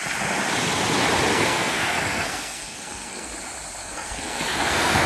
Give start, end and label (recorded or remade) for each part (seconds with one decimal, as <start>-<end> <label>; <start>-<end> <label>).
0.0-1.3 recorded; 1.3-3.3 remade; 3.3-3.8 recorded; 3.8-5.1 remade